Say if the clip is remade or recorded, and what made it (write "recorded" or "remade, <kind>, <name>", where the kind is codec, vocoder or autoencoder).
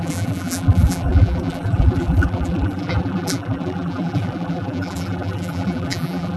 remade, vocoder, BigVGAN v2